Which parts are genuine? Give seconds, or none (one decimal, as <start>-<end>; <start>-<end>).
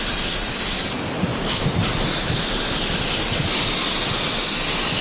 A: 0.0-5.0